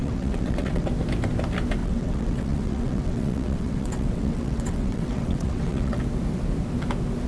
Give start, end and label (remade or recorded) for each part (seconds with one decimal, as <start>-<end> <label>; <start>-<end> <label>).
0.0-0.9 remade; 0.9-1.8 recorded; 1.8-6.0 remade; 6.0-7.3 recorded